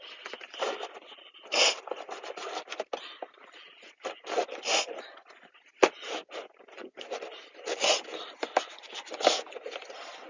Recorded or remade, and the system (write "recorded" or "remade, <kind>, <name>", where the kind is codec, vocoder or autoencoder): recorded